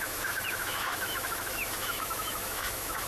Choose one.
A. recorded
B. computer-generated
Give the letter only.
B